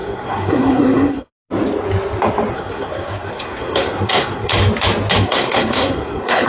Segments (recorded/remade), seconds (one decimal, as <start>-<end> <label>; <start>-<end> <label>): 0.0-1.3 remade; 1.3-2.5 recorded; 2.5-4.5 remade; 4.5-5.2 recorded; 5.2-6.5 remade